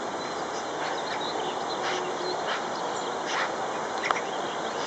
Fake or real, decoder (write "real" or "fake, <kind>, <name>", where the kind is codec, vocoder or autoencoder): real